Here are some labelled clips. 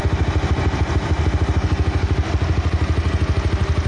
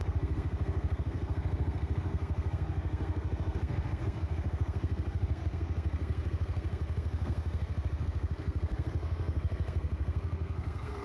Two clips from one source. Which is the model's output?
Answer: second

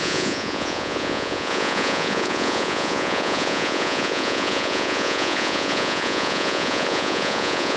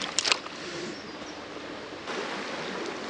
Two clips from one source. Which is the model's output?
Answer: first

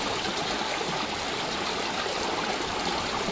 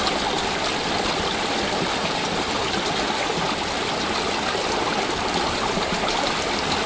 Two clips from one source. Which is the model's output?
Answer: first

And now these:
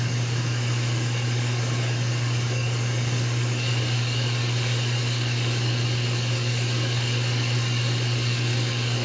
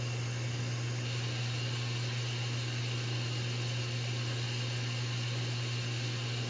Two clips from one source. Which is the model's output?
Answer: first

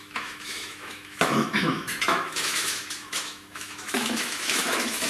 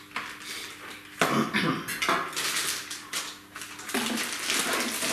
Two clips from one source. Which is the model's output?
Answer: first